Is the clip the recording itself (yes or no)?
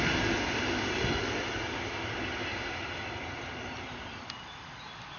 yes